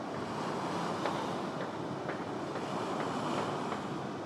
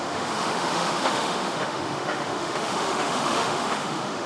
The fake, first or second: second